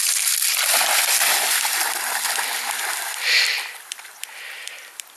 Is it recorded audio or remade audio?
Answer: remade